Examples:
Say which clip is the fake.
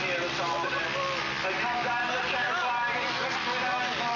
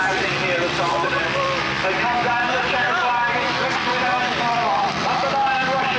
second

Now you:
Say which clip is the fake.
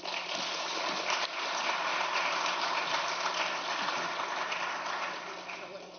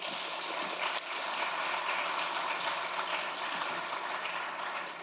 second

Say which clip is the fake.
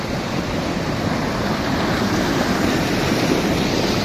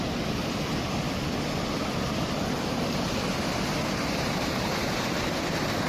first